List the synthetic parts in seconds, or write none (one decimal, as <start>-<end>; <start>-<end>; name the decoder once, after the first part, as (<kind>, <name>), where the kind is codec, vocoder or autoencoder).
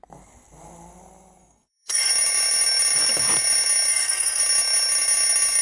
1.4-2.1 (codec, SNAC); 3.9-4.4